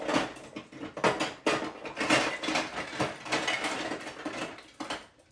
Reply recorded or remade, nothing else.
recorded